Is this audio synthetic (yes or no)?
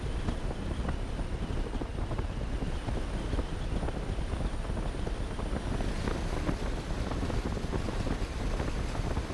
no